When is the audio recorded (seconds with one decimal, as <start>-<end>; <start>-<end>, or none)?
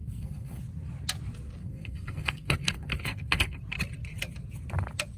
0.6-1.6; 3.6-5.2